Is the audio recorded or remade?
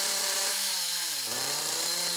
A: remade